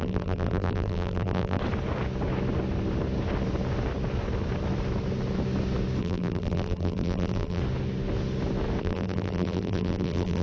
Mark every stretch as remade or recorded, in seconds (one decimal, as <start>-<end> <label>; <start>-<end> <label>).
0.0-1.6 remade; 1.6-6.0 recorded; 6.0-7.6 remade; 7.6-8.8 recorded; 8.8-10.4 remade